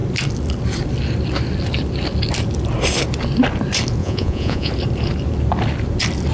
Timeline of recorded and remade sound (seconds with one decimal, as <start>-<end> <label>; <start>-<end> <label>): 0.0-4.0 recorded; 4.0-4.7 remade; 4.7-6.3 recorded